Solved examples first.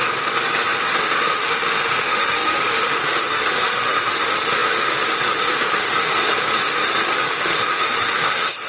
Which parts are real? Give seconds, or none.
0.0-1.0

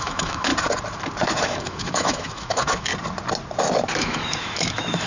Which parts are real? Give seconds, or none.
0.5-1.4; 2.9-4.0

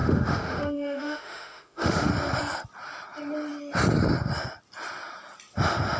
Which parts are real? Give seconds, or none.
2.1-6.0

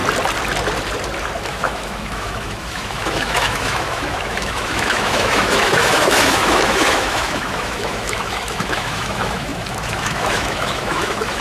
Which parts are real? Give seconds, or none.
0.0-1.4